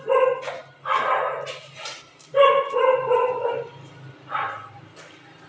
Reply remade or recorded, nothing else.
recorded